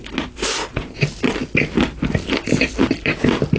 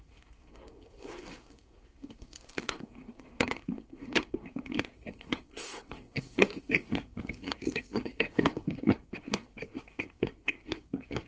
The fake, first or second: second